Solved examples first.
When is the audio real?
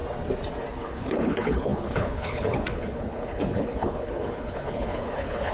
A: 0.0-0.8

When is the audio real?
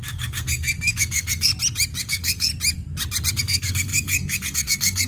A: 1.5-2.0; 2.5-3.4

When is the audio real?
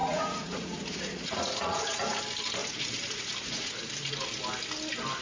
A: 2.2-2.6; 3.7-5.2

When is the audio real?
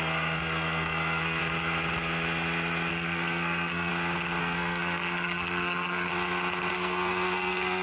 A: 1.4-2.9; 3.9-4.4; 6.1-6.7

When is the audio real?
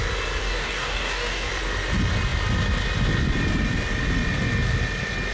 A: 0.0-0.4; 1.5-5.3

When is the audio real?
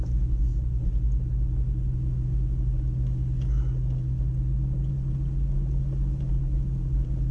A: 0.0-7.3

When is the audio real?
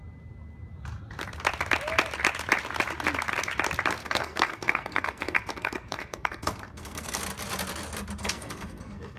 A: 0.0-4.0; 7.2-8.2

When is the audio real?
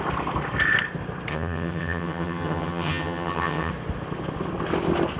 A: 0.0-1.3; 3.7-5.2